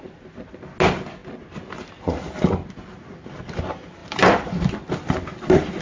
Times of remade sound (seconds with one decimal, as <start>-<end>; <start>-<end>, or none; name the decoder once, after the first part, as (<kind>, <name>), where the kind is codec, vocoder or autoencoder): 4.0-4.7 (vocoder, BigVGAN v2)